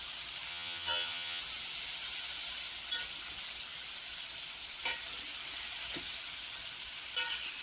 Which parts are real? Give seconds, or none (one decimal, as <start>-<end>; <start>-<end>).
0.0-0.5; 1.4-7.6